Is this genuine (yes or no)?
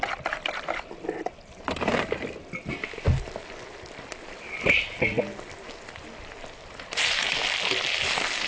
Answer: yes